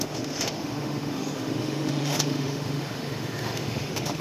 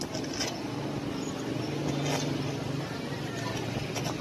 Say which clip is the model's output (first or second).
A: first